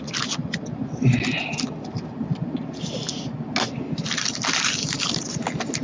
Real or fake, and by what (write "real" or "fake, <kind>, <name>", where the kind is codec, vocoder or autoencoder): real